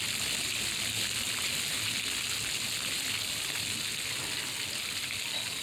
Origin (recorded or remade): recorded